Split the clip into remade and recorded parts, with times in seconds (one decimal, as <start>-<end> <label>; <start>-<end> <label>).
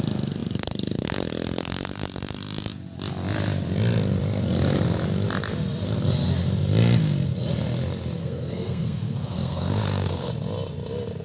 0.0-8.2 recorded; 8.2-10.3 remade; 10.3-11.2 recorded